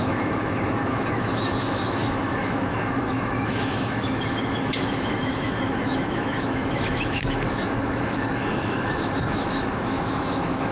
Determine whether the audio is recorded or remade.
remade